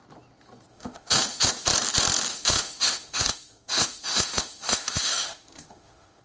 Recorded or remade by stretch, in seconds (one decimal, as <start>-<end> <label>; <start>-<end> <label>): 0.0-0.7 recorded; 0.7-1.5 remade; 1.5-2.3 recorded; 2.3-6.2 remade

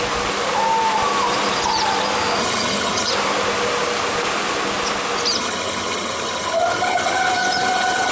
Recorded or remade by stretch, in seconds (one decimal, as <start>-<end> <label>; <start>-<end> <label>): 0.0-2.4 recorded; 2.4-3.1 remade; 3.1-5.3 recorded; 5.3-8.1 remade

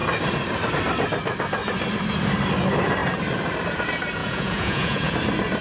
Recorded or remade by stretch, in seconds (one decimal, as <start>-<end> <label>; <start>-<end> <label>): 0.0-4.2 recorded; 4.2-5.1 remade; 5.1-5.6 recorded

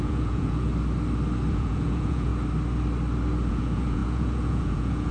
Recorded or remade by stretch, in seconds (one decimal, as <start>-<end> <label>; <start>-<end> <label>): 0.0-0.7 remade; 0.7-1.5 recorded; 1.5-2.3 remade; 2.3-3.5 recorded; 3.5-5.1 remade

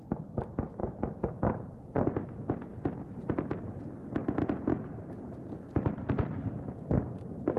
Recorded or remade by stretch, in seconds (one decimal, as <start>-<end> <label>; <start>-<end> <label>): 0.0-0.8 recorded; 0.8-2.3 remade; 2.3-4.2 recorded; 4.2-5.8 remade; 5.8-7.6 recorded

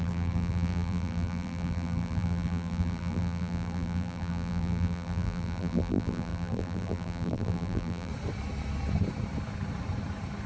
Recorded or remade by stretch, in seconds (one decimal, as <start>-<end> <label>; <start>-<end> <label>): 0.0-8.1 remade; 8.1-10.5 recorded